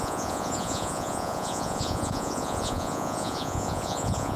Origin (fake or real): fake